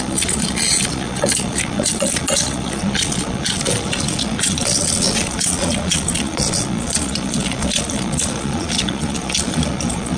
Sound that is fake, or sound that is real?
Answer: fake